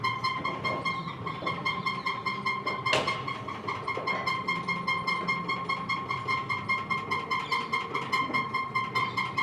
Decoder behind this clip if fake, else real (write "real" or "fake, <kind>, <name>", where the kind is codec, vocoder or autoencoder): real